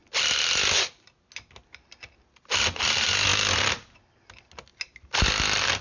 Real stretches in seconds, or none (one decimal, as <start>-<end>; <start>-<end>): 0.0-5.8